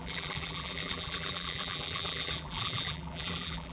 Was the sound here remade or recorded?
remade